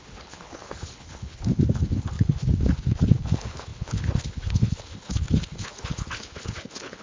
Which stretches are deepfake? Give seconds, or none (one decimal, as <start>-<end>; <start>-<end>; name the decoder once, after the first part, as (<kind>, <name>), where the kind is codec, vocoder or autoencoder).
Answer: 0.0-7.0 (codec, HILCodec)